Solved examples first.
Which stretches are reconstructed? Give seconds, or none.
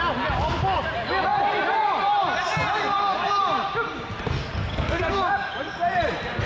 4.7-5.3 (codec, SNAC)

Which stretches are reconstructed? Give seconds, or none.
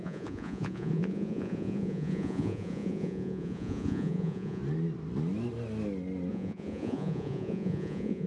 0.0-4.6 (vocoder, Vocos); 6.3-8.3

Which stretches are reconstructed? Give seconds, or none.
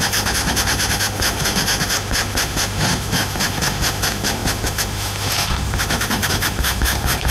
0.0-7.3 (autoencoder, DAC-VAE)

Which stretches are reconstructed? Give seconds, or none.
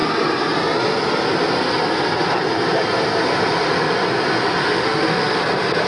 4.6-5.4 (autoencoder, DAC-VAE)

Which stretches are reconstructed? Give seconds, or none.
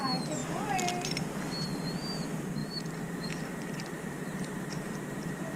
2.6-5.6 (vocoder, BigVGAN v2)